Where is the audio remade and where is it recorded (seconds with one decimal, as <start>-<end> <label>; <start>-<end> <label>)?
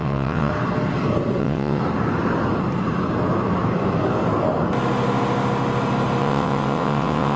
0.0-0.5 remade; 0.5-1.4 recorded; 1.4-1.8 remade; 1.8-6.2 recorded; 6.2-7.4 remade